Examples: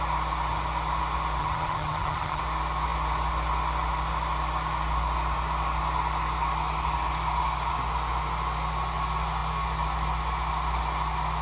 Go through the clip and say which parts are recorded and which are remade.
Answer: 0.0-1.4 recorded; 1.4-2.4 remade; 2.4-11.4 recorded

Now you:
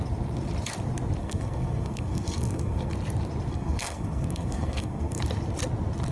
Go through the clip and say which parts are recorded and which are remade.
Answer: 0.0-1.2 recorded; 1.2-2.9 remade; 2.9-3.5 recorded; 3.5-5.2 remade; 5.2-6.1 recorded

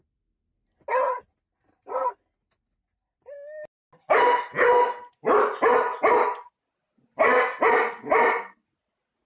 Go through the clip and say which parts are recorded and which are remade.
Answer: 0.0-9.3 recorded